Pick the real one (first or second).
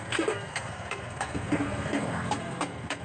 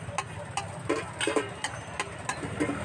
second